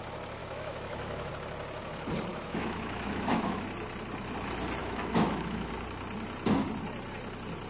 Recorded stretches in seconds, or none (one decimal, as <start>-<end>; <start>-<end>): 0.0-0.4; 1.3-2.3; 3.6-4.8; 5.7-7.7